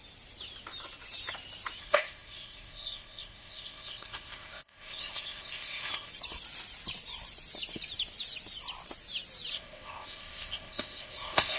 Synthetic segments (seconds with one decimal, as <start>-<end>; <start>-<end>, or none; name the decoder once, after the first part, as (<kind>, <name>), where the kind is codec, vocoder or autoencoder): 1.8-6.1 (codec, ZipCodec); 9.5-11.6